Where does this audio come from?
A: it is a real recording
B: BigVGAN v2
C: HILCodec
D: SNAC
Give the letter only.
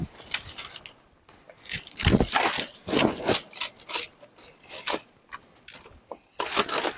A